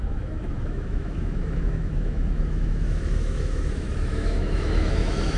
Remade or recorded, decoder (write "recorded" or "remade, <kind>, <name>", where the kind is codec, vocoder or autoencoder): remade, autoencoder, DAC-VAE